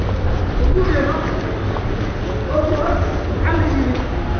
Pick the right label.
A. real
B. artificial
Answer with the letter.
A